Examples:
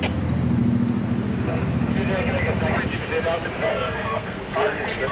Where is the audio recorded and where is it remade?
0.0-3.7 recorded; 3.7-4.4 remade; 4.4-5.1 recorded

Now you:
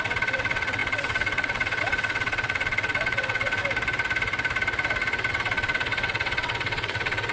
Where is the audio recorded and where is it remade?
0.0-3.6 remade; 3.6-5.3 recorded; 5.3-7.3 remade

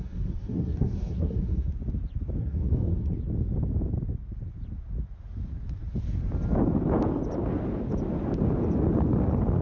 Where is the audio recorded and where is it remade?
0.0-1.7 remade; 1.7-2.4 recorded; 2.4-3.1 remade; 3.1-9.6 recorded

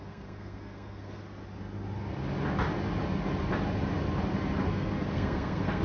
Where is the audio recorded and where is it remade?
0.0-1.2 remade; 1.2-4.7 recorded; 4.7-5.8 remade

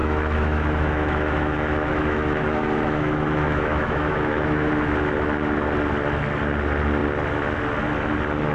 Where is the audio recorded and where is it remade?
0.0-4.7 remade; 4.7-8.5 recorded

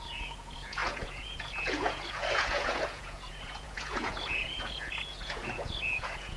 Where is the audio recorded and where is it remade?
0.0-6.4 remade

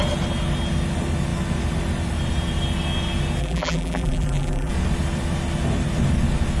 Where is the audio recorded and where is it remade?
0.0-3.4 recorded; 3.4-4.7 remade; 4.7-6.6 recorded